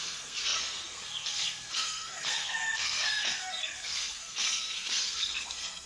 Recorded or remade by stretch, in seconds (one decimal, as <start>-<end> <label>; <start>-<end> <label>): 0.0-5.9 remade